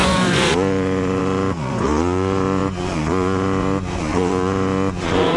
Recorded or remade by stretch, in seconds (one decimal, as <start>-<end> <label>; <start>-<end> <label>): 0.0-5.4 remade